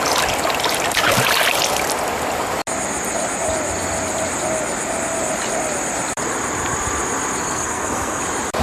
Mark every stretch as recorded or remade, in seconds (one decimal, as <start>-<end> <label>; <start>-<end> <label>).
0.0-7.4 recorded; 7.4-8.2 remade; 8.2-8.6 recorded

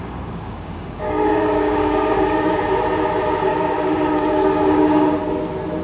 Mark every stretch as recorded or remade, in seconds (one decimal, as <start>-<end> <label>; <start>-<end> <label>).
0.0-2.5 remade; 2.5-3.5 recorded; 3.5-5.2 remade; 5.2-5.8 recorded

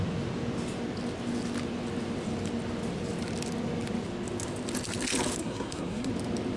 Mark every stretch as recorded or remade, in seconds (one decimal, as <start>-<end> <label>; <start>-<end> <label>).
0.0-5.4 recorded; 5.4-6.1 remade; 6.1-6.6 recorded

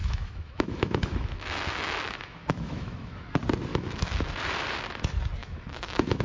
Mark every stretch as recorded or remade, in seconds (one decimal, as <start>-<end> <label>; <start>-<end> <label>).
0.0-3.3 remade; 3.3-3.7 recorded; 3.7-4.2 remade; 4.2-5.4 recorded; 5.4-6.2 remade

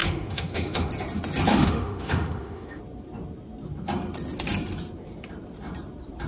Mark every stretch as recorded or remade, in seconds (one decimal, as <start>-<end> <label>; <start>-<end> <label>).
0.0-0.9 remade; 0.9-1.5 recorded; 1.5-2.8 remade; 2.8-6.3 recorded

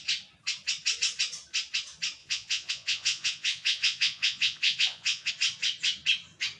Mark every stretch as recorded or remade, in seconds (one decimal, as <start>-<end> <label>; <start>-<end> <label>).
0.0-2.2 recorded; 2.2-5.3 remade; 5.3-6.6 recorded